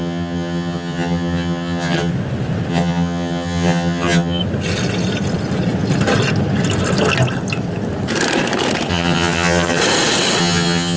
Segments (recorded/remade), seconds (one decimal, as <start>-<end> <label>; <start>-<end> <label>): 0.0-2.1 remade; 2.1-2.7 recorded; 2.7-4.4 remade; 4.4-8.9 recorded; 8.9-9.8 remade; 9.8-10.4 recorded; 10.4-11.0 remade